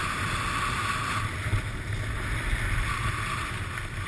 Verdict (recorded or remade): recorded